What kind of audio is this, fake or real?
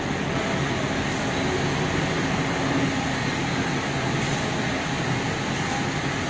real